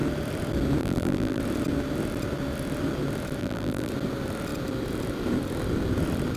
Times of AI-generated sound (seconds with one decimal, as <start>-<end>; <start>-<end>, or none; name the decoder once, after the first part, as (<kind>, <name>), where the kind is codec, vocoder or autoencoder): 0.8-1.4 (vocoder, BigVGAN v2); 3.4-3.9